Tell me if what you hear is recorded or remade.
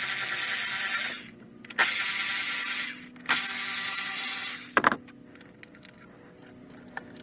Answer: recorded